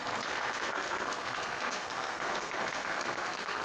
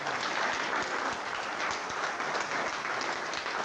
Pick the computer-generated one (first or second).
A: first